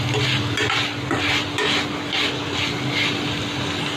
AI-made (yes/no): no